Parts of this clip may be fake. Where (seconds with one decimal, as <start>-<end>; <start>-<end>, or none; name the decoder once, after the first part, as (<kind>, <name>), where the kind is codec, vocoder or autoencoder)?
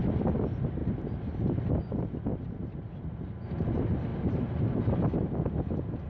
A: 0.8-1.7 (vocoder, BigVGAN v2); 2.3-2.9; 4.1-5.0